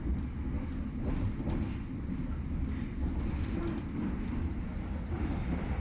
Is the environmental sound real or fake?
real